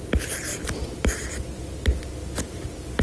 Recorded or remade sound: recorded